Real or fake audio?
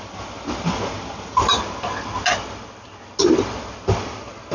real